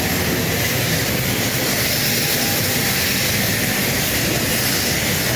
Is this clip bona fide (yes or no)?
yes